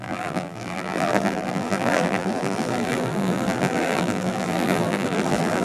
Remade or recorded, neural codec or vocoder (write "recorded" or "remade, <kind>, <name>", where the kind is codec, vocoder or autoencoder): remade, vocoder, BigVGAN v2